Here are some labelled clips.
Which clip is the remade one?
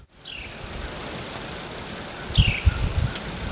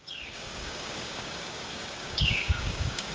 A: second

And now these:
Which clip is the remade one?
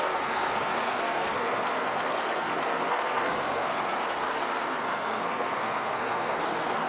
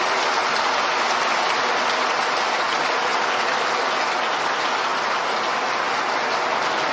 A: first